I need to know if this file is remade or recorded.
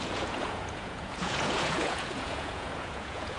remade